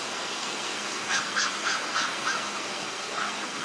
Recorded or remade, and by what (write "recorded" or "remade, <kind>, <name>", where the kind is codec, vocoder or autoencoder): remade, codec, SNAC